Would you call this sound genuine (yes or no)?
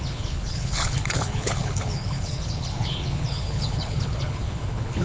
no